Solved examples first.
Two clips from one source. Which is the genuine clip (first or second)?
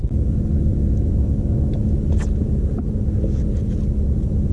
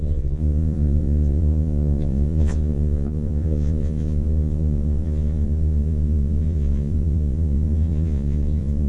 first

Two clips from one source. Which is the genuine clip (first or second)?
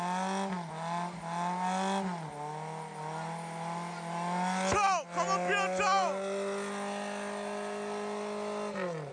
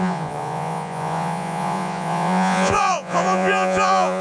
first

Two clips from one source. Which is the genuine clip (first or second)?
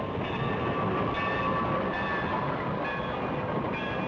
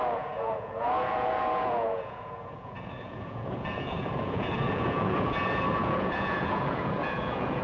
first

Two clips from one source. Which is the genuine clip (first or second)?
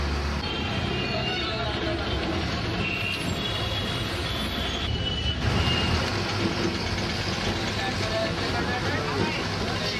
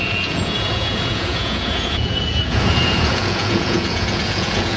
first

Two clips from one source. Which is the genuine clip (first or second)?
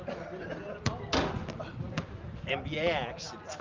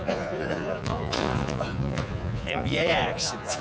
first